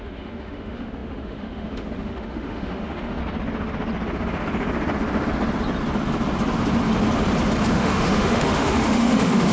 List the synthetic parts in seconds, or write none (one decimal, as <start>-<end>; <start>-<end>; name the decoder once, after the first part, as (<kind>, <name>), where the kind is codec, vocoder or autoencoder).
0.0-3.2 (autoencoder, DAC-VAE); 7.7-9.5